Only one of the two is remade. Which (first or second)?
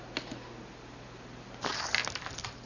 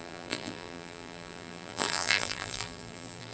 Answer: second